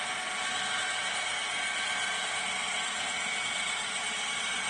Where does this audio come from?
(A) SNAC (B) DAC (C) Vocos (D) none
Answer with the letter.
D